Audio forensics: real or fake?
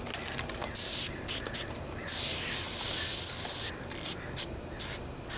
real